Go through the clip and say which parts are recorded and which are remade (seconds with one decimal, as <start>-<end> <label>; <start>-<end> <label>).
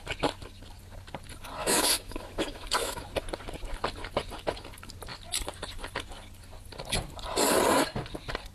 0.0-1.6 recorded; 1.6-3.0 remade; 3.0-8.5 recorded